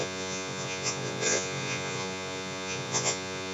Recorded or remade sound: remade